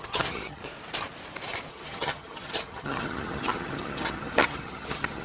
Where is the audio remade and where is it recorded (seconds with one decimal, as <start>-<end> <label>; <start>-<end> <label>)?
0.0-0.6 remade; 0.6-1.7 recorded; 1.7-5.2 remade